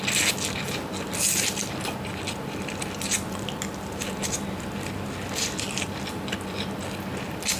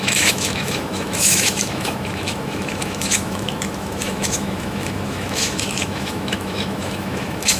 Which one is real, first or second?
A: first